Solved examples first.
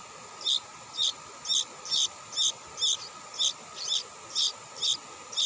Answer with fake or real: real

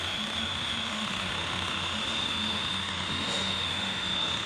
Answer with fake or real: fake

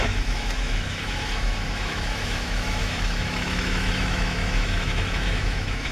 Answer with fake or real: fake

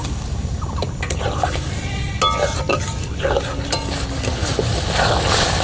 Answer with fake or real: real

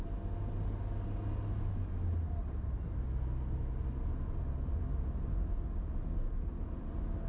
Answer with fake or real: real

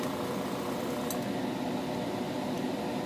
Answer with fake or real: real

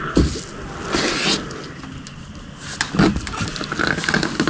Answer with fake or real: real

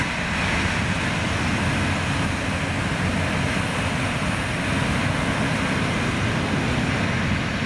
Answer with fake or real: real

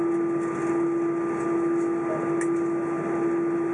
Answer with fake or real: real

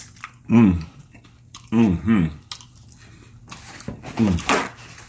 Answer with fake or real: real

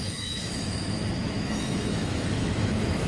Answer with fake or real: fake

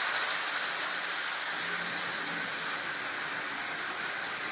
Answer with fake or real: real